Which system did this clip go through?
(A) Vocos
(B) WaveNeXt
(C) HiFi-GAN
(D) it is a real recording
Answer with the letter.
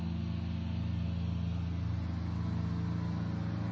D